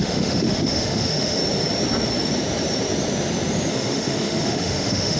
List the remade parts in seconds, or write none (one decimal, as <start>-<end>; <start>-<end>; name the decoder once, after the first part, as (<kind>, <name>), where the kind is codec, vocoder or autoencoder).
0.0-1.4 (autoencoder, DAC-VAE); 3.7-5.2